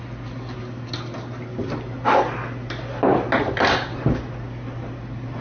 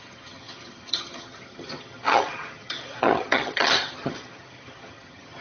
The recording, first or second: first